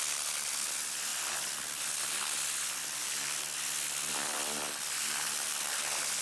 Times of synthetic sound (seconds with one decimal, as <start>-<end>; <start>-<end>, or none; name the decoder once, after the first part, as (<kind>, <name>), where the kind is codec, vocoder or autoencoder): none